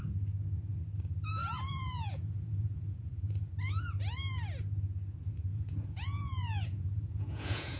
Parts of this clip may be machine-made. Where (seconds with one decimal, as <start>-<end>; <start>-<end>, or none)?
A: 1.4-3.5; 5.5-7.8